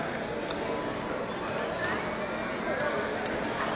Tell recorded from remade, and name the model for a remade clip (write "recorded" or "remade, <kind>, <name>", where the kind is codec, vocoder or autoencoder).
recorded